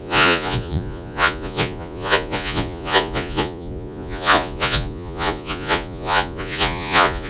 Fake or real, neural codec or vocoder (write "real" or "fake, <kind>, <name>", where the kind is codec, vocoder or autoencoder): fake, vocoder, Vocos